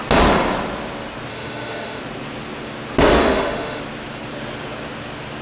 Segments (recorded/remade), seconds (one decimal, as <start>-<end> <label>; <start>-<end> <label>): 0.0-1.3 recorded; 1.3-2.0 remade; 2.0-3.1 recorded; 3.1-3.8 remade; 3.8-5.4 recorded